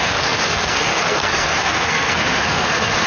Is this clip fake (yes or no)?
yes